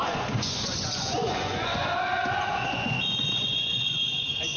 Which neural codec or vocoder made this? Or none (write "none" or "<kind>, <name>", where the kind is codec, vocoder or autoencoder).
vocoder, Vocos